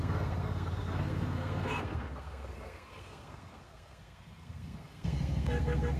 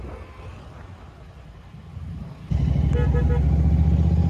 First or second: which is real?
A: second